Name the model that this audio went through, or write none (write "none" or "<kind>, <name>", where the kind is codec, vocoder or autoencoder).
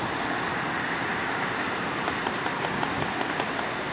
none